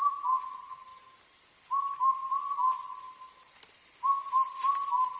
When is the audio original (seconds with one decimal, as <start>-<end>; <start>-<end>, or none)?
0.0-5.2